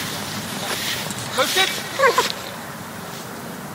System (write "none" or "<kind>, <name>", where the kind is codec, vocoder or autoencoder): vocoder, BigVGAN v2